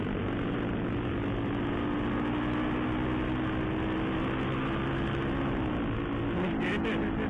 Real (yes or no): yes